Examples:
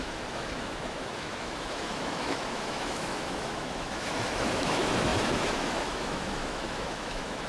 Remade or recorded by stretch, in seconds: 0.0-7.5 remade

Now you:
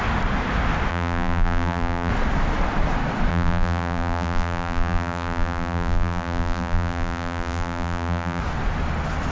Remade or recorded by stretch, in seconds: 0.0-0.9 recorded; 0.9-2.1 remade; 2.1-3.3 recorded; 3.3-8.4 remade; 8.4-9.3 recorded